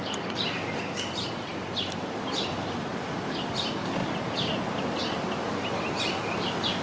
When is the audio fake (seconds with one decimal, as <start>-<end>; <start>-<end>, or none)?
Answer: none